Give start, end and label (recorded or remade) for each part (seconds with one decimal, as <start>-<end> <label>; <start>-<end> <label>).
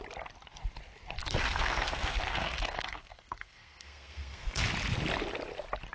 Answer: 0.0-1.2 recorded; 1.2-4.7 remade; 4.7-5.9 recorded